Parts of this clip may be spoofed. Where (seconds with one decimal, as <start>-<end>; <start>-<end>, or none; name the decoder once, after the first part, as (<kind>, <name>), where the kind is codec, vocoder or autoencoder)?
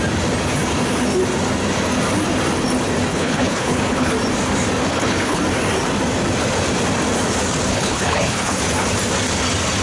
3.1-4.1 (codec, HILCodec); 4.9-5.4; 7.7-8.6